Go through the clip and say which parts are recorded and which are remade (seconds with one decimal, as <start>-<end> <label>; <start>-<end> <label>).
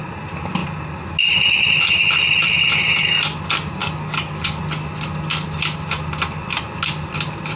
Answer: 0.0-3.8 recorded; 3.8-4.6 remade; 4.6-7.6 recorded